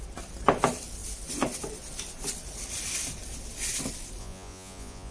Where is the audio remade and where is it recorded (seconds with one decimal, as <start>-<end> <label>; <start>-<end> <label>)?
0.0-4.2 recorded; 4.2-5.1 remade